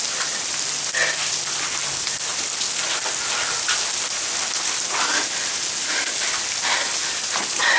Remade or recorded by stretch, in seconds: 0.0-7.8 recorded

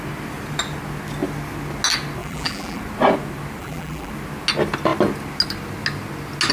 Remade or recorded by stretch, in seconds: 0.0-2.2 recorded; 2.2-2.8 remade; 2.8-3.6 recorded; 3.6-4.1 remade; 4.1-6.5 recorded